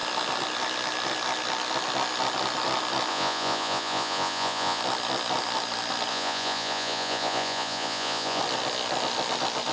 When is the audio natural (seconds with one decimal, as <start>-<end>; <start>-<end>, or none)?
0.0-3.1; 4.8-6.1; 8.4-9.7